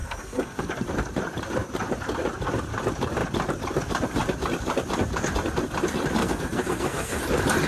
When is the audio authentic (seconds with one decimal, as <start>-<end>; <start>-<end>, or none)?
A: 0.7-6.2; 7.2-7.7